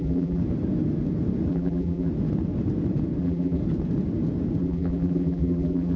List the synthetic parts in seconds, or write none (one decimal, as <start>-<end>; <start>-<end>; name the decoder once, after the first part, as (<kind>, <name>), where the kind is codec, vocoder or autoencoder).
0.0-0.4 (vocoder, BigVGAN v2); 1.5-2.1; 3.2-3.6; 4.6-6.0